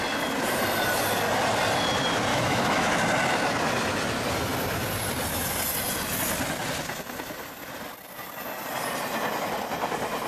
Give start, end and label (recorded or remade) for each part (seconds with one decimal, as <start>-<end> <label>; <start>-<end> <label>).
0.0-2.3 recorded; 2.3-2.9 remade; 2.9-10.3 recorded